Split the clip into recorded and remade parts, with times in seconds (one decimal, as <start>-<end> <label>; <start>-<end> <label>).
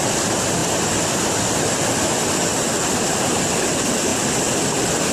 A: 0.0-5.1 recorded